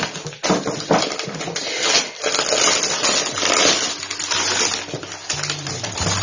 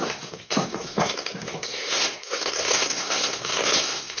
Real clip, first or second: first